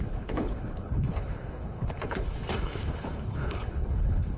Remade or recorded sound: remade